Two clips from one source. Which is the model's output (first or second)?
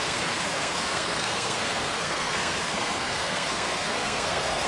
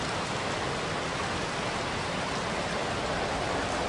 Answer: first